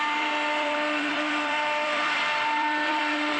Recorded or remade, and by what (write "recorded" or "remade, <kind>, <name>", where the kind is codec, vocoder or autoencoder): remade, vocoder, BigVGAN v2